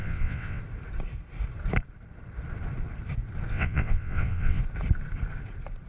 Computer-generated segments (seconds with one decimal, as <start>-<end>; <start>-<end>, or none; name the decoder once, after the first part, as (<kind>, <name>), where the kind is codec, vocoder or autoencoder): 0.0-0.6 (vocoder, WaveNeXt); 3.5-4.6

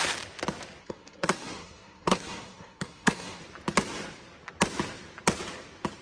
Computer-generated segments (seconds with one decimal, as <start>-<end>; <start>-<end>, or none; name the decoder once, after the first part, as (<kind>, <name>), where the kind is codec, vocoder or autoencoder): 0.8-3.4 (codec, SNAC)

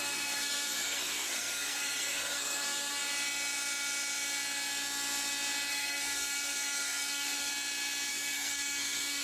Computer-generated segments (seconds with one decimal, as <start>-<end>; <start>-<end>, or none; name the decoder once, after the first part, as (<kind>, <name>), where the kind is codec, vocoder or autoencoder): 0.0-3.0 (codec, SNAC); 5.7-7.5; 8.1-9.2

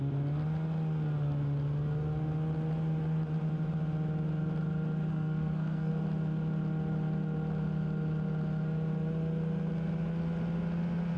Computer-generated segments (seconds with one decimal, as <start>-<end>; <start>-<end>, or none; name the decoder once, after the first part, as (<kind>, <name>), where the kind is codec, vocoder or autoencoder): 5.1-5.9 (codec, SNAC)

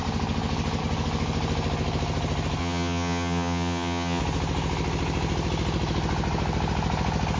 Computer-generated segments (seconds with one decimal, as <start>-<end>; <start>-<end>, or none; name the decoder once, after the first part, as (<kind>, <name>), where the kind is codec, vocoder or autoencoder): 2.6-4.2 (vocoder, HiFi-GAN)

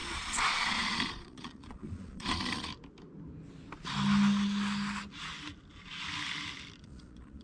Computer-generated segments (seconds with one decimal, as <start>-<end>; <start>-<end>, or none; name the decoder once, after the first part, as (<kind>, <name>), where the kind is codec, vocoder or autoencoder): 0.0-2.7 (vocoder, Vocos); 6.8-7.4